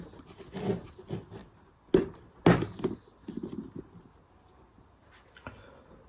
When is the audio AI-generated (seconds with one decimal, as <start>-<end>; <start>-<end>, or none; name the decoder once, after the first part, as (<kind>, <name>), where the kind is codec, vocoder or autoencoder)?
none